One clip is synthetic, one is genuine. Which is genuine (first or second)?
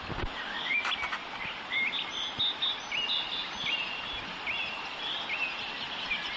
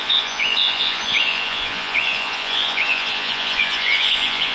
first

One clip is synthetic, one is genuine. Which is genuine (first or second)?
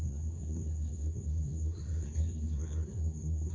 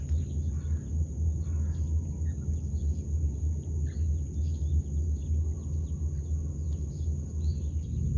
second